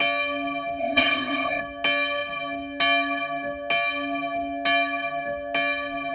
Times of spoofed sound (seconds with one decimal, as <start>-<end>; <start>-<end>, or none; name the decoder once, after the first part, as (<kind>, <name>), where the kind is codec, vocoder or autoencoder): 0.8-1.6 (codec, ZipCodec)